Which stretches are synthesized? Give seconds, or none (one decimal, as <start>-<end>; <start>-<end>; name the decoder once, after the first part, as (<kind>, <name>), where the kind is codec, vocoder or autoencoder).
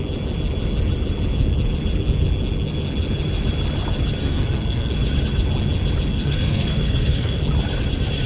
4.2-4.9 (codec, SNAC); 6.1-7.4